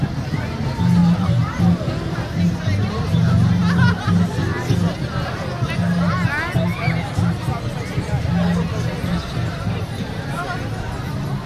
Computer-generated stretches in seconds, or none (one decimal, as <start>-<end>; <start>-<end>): 1.0-1.6